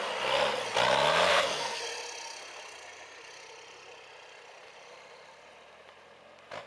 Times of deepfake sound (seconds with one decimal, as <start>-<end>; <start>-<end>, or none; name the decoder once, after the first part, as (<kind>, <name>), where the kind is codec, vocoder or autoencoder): 1.3-1.8 (codec, SNAC)